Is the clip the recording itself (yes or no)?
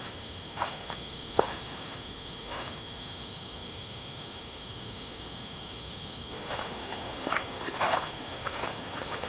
no